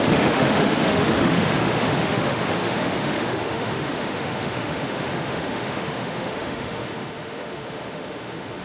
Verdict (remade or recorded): remade